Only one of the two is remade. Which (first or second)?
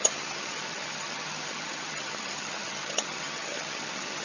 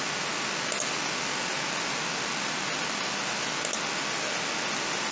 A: first